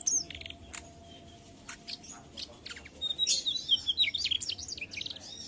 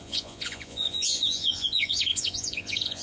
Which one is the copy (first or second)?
second